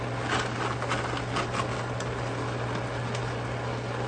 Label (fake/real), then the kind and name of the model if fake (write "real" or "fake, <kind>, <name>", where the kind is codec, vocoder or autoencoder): real